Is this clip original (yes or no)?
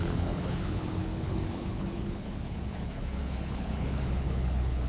no